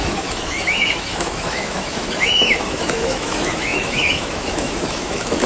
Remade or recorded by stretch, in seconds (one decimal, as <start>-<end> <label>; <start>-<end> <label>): 0.0-5.5 remade